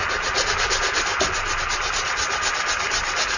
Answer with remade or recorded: recorded